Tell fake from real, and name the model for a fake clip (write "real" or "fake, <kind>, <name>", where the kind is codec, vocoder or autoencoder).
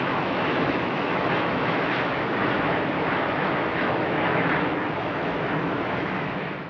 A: fake, autoencoder, DAC-VAE